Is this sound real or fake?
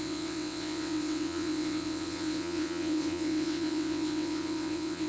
fake